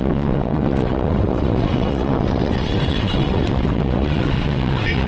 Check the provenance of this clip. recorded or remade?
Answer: remade